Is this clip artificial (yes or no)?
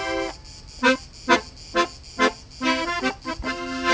no